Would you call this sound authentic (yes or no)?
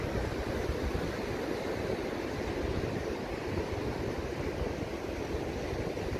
yes